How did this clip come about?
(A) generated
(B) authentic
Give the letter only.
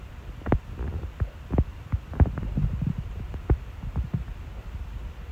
A